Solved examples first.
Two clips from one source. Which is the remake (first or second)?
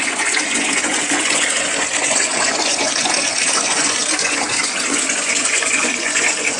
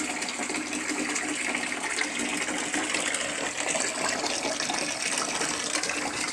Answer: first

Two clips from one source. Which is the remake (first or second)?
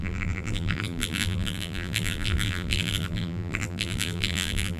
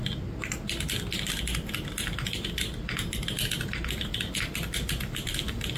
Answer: first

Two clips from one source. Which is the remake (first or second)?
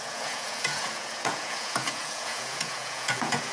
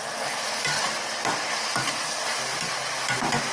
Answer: first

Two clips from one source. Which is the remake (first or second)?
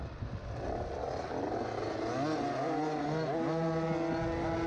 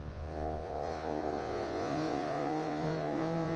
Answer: second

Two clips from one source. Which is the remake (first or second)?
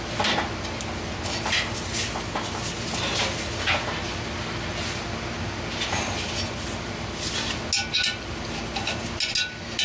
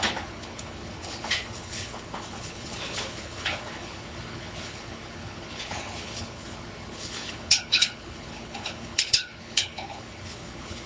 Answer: second